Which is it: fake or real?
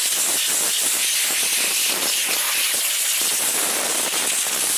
real